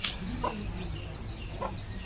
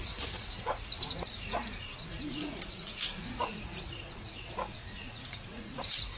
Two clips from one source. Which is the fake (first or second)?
second